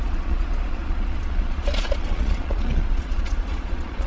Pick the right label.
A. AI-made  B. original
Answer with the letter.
A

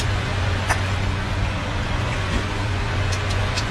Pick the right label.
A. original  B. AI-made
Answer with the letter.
B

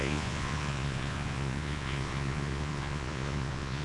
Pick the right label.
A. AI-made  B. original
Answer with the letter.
A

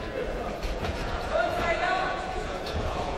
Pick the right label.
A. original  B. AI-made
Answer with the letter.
B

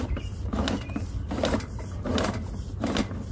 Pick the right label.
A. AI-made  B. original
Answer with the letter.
B